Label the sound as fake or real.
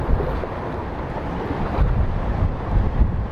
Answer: real